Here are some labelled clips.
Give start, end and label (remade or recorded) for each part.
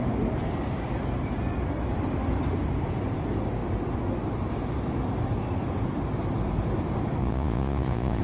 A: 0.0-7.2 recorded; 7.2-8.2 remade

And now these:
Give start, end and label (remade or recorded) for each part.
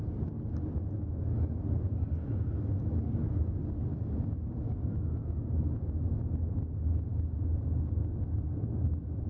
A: 0.0-9.3 recorded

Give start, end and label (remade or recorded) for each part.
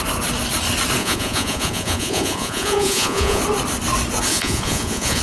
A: 0.0-1.0 recorded; 1.0-3.4 remade; 3.4-4.3 recorded; 4.3-5.2 remade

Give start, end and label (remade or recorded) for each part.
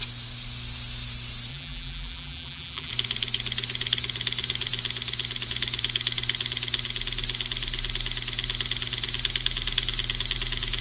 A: 0.0-1.5 recorded; 1.5-2.9 remade; 2.9-10.8 recorded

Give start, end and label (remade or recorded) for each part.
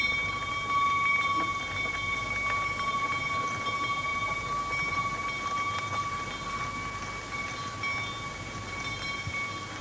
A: 0.0-9.8 recorded